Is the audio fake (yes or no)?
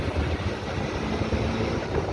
no